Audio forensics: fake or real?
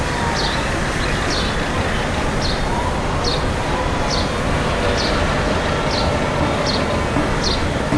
real